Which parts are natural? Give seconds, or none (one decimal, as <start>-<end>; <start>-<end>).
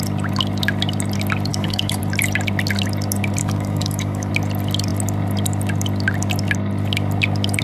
0.0-1.5; 2.0-3.4; 4.3-7.6